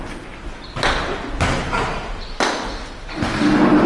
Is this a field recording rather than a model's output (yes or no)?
yes